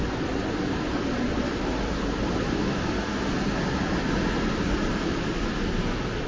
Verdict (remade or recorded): recorded